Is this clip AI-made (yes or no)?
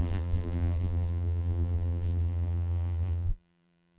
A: yes